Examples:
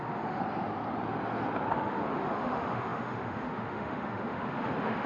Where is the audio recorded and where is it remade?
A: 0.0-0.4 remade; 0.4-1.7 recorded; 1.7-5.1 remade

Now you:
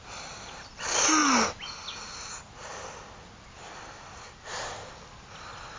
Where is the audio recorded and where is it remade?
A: 0.0-5.8 recorded

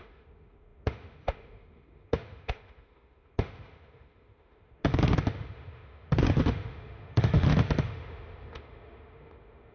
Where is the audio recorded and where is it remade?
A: 0.0-9.7 remade

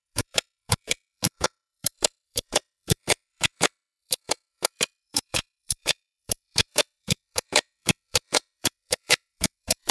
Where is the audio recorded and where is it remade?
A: 0.0-9.9 remade

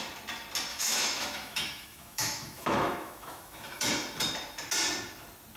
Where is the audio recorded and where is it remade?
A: 0.0-0.7 recorded; 0.7-3.9 remade; 3.9-5.6 recorded

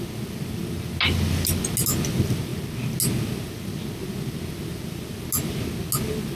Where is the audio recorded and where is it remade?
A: 0.0-6.3 recorded

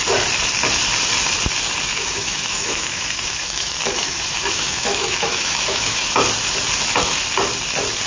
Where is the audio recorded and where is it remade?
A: 0.0-1.9 recorded; 1.9-6.1 remade; 6.1-8.1 recorded